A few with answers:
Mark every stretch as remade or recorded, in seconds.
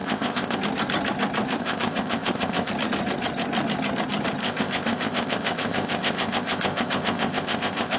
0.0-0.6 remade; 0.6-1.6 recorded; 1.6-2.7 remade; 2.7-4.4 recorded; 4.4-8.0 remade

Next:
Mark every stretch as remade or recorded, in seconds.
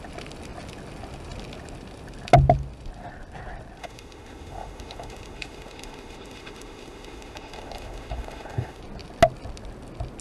0.0-3.8 recorded; 3.8-8.8 remade; 8.8-10.2 recorded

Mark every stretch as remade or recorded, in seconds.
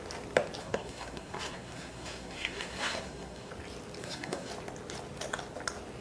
0.0-0.6 recorded; 0.6-3.5 remade; 3.5-4.0 recorded; 4.0-4.5 remade; 4.5-6.0 recorded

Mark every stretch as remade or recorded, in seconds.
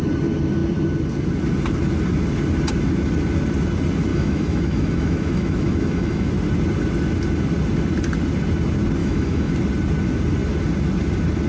0.0-4.1 recorded; 4.1-6.3 remade; 6.3-9.0 recorded; 9.0-9.5 remade; 9.5-11.5 recorded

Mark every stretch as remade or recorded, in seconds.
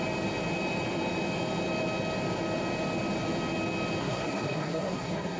0.0-4.0 recorded; 4.0-5.4 remade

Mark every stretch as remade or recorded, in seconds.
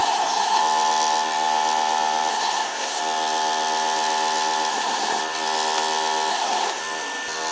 0.0-0.6 remade; 0.6-2.3 recorded; 2.3-3.0 remade; 3.0-4.7 recorded; 4.7-5.2 remade; 5.2-6.3 recorded; 6.3-6.8 remade; 6.8-7.5 recorded